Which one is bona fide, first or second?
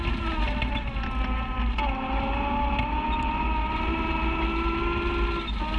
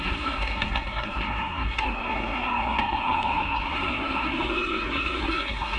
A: first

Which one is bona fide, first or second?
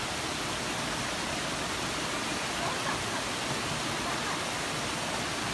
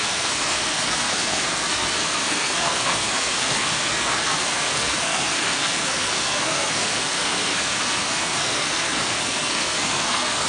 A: first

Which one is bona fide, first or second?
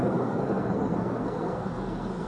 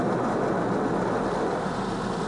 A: second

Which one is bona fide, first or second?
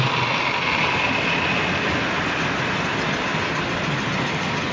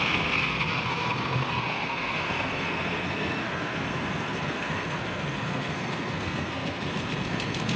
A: first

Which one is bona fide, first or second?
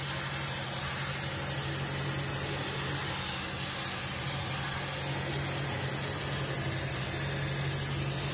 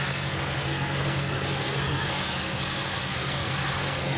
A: first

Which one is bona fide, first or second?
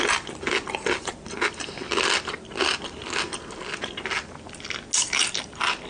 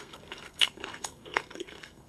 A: first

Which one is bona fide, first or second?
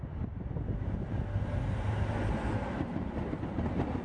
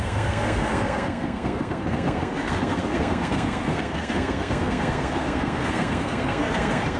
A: first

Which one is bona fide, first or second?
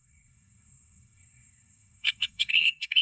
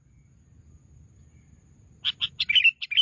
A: second